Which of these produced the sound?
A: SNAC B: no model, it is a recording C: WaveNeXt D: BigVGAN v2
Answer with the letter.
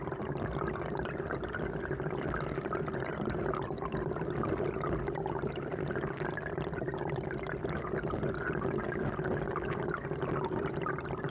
B